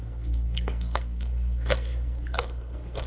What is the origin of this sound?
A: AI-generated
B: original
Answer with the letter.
A